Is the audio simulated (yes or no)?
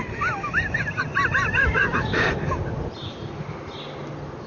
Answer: no